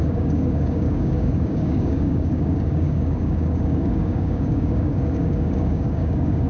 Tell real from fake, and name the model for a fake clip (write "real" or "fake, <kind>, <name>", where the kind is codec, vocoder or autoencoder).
fake, codec, DAC